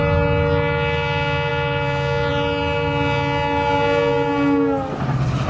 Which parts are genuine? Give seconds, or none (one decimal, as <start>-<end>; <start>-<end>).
0.0-5.5